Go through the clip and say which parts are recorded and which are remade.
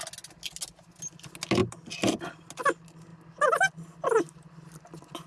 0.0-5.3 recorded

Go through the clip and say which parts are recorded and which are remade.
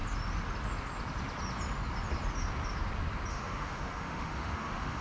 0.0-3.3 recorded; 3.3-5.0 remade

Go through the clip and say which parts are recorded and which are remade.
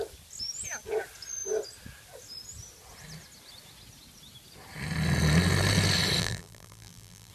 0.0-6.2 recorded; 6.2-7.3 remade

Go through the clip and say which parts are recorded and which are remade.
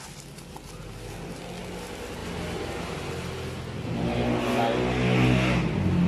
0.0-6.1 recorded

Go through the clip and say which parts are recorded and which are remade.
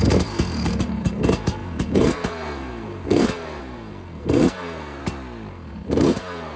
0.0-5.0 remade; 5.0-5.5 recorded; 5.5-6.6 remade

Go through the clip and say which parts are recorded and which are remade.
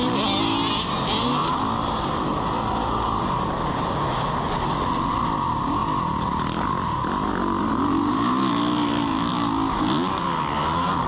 0.0-1.4 recorded; 1.4-4.0 remade; 4.0-9.3 recorded; 9.3-10.4 remade; 10.4-11.1 recorded